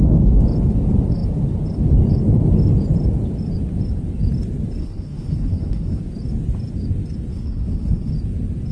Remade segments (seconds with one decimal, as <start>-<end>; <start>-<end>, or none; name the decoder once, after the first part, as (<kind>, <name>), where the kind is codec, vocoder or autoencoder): 4.8-6.0 (codec, HILCodec); 7.3-8.1